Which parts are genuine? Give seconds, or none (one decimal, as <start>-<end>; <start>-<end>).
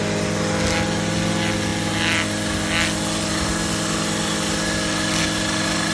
0.0-5.9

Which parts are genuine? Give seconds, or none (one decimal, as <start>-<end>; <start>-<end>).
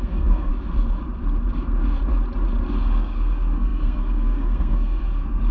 0.5-2.8